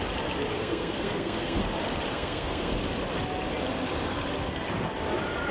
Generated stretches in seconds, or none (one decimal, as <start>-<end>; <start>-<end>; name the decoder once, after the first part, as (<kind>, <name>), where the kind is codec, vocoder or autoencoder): 0.5-1.6 (codec, SNAC); 2.1-2.7